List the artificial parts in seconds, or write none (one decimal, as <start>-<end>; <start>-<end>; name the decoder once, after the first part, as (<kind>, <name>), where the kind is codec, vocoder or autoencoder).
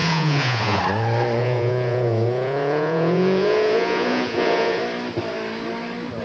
0.0-0.8 (vocoder, Vocos); 1.4-4.8